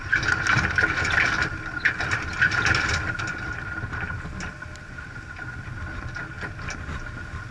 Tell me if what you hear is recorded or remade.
recorded